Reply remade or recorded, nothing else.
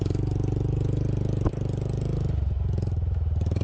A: recorded